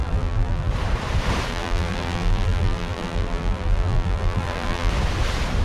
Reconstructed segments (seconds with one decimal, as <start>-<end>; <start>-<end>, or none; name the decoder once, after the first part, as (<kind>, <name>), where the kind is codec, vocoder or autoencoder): 0.0-0.7 (vocoder, BigVGAN v2); 1.5-4.9